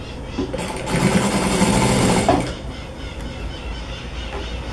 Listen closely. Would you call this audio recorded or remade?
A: recorded